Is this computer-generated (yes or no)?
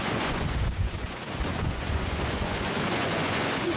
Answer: yes